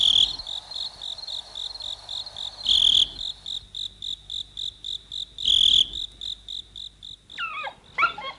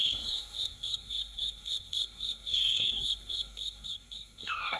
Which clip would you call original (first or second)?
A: first